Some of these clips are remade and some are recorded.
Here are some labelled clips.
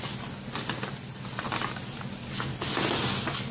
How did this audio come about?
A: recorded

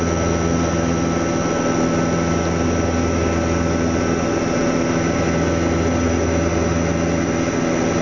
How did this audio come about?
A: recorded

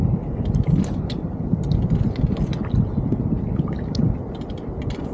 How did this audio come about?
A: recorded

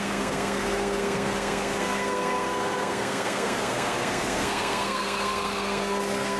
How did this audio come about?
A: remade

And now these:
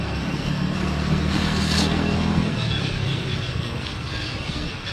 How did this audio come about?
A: remade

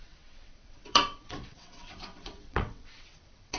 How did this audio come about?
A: remade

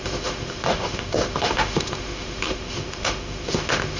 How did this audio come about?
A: remade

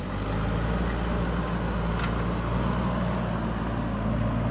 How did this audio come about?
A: recorded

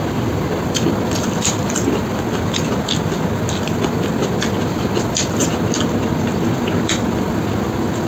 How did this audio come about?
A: remade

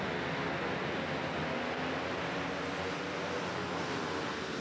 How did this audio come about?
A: recorded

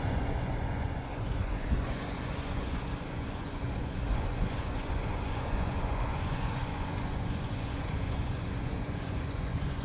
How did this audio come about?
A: remade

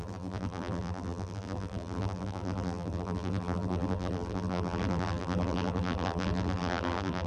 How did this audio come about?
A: remade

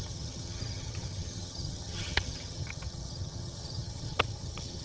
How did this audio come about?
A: remade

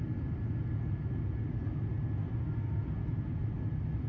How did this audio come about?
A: recorded